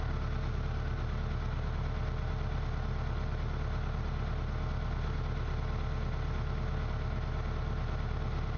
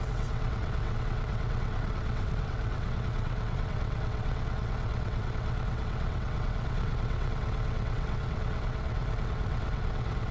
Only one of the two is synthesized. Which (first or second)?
second